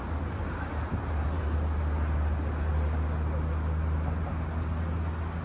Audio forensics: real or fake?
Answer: real